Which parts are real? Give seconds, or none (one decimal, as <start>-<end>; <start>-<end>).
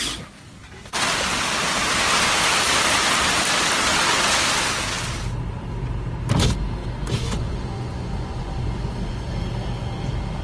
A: 0.0-6.8; 9.3-10.4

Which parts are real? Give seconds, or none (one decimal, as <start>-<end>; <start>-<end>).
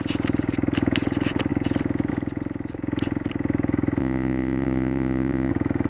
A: 0.0-4.0; 5.5-5.9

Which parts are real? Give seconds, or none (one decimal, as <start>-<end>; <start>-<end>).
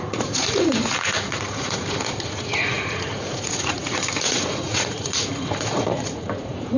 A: none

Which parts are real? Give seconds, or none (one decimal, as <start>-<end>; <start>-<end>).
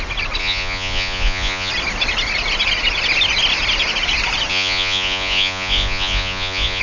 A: 0.0-0.4; 1.7-4.5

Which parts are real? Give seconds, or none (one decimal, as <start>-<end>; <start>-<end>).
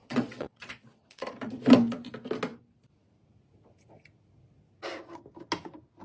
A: 1.5-6.0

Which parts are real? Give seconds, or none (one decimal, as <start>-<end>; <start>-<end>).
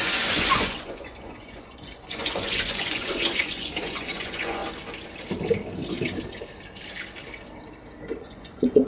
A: 4.6-8.2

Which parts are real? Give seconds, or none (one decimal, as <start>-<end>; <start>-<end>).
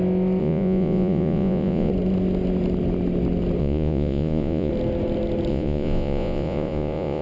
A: 0.0-0.4; 1.9-3.6; 4.7-5.5